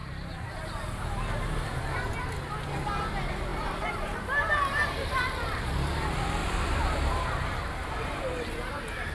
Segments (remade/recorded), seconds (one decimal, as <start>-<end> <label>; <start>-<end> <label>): 0.0-0.6 remade; 0.6-3.5 recorded; 3.5-5.2 remade; 5.2-6.4 recorded; 6.4-8.7 remade; 8.7-9.1 recorded